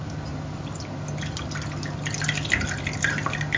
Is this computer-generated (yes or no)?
no